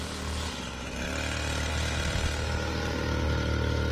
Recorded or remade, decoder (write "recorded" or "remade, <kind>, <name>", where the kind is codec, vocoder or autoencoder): recorded